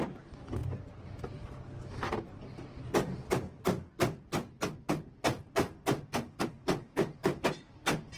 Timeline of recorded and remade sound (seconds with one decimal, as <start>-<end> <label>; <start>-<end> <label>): 0.0-8.2 recorded